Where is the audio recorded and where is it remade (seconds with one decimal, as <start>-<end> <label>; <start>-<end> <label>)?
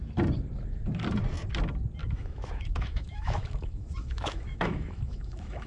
0.0-2.0 recorded; 2.0-5.7 remade